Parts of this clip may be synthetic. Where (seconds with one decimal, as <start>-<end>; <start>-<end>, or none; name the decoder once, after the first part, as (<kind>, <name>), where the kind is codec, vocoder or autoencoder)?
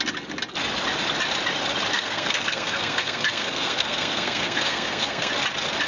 1.9-5.3 (codec, SNAC)